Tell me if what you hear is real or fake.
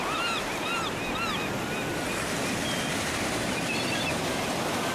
real